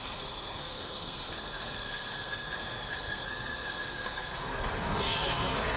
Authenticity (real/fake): fake